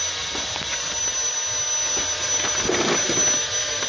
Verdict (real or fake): real